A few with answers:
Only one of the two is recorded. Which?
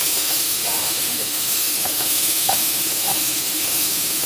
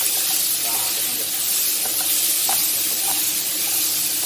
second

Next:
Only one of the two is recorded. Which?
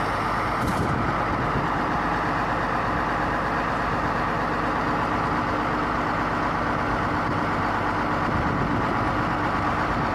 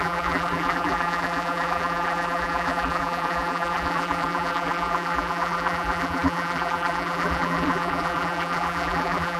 first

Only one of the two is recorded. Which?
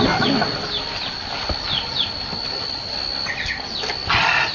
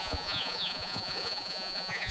first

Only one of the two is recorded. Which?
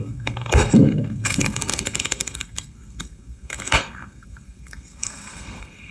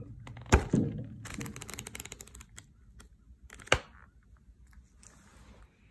second